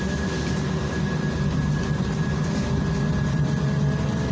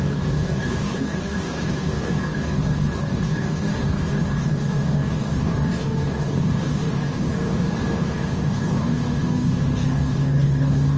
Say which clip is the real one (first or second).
first